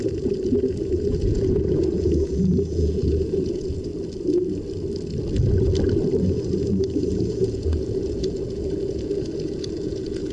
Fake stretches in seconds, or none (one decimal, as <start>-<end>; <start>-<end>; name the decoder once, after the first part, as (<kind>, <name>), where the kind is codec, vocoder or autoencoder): 0.0-3.9 (vocoder, Vocos); 7.1-10.3